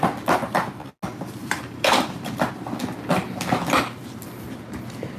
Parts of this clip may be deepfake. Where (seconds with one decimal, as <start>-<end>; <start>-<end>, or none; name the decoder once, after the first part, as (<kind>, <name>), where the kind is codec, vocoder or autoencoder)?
1.4-2.3 (vocoder, BigVGAN v2)